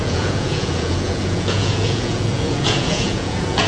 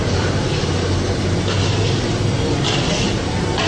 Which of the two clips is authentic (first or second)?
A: second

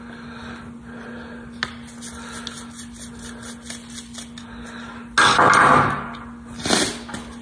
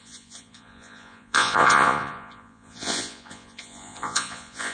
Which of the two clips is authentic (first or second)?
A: first